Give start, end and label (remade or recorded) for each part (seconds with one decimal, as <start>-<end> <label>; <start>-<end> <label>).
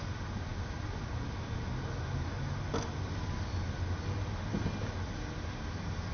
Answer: 0.0-6.1 recorded